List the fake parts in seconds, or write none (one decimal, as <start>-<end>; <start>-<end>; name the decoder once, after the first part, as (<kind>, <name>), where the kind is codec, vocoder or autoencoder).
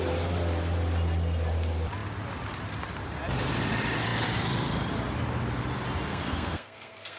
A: 6.1-7.2 (codec, SNAC)